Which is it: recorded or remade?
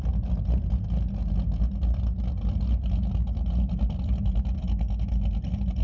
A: recorded